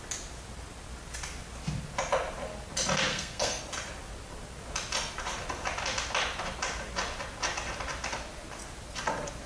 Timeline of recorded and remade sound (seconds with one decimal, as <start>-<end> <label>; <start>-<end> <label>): 0.0-3.1 recorded; 3.1-3.6 remade; 3.6-9.5 recorded